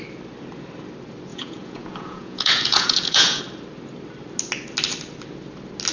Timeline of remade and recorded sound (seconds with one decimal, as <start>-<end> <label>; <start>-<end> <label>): 0.0-1.3 recorded; 1.3-3.4 remade; 3.4-5.9 recorded